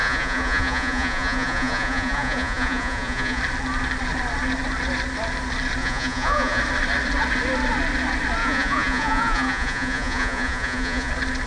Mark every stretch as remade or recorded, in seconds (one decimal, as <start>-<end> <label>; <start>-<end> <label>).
0.0-3.4 remade; 3.4-5.8 recorded; 5.8-6.6 remade; 6.6-8.4 recorded; 8.4-11.1 remade; 11.1-11.5 recorded